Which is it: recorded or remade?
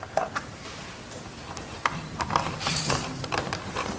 recorded